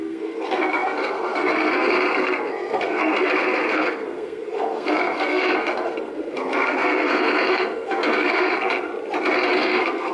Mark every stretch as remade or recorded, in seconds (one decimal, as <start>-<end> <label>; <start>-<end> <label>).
0.0-8.9 remade; 8.9-9.6 recorded; 9.6-10.1 remade